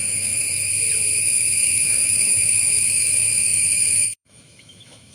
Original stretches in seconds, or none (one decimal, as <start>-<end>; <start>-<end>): 0.7-1.2